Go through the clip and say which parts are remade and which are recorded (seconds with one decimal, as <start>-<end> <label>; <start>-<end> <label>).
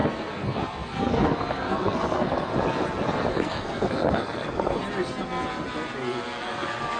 0.0-2.5 remade; 2.5-3.3 recorded; 3.3-4.8 remade; 4.8-6.4 recorded; 6.4-7.0 remade